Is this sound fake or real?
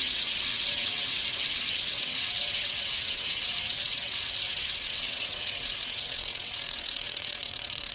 fake